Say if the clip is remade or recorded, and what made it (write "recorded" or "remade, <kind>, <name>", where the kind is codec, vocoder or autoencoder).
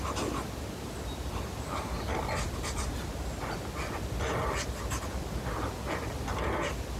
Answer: recorded